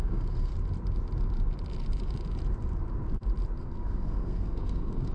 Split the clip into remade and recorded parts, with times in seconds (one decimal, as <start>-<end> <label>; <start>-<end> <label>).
0.0-0.5 remade; 0.5-3.6 recorded; 3.6-5.1 remade